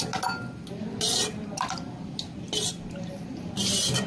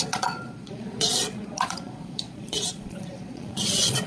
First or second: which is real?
first